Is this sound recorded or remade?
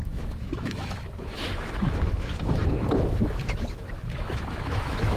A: remade